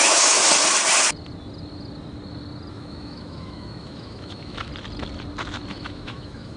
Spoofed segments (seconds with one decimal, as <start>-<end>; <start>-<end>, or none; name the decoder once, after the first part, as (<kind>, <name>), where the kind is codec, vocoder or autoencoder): 0.0-0.4 (autoencoder, DAC-VAE); 2.7-4.7; 5.7-6.6